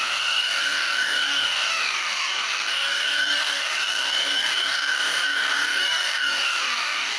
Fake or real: fake